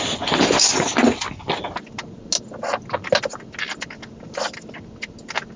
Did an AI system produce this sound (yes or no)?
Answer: no